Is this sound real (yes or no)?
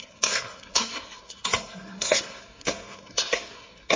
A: no